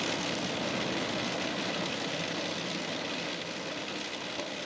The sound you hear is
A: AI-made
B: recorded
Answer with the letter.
B